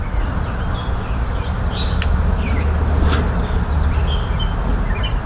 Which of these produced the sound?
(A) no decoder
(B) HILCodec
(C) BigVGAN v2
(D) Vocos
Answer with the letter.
A